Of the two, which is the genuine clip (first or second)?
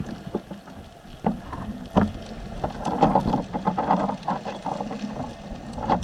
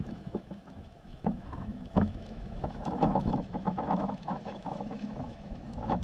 first